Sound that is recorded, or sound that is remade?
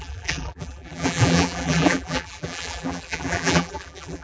remade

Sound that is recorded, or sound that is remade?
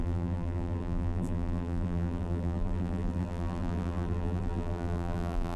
remade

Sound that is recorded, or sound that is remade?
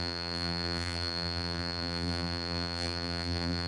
remade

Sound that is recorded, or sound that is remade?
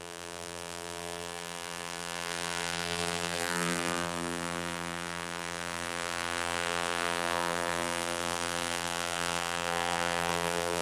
remade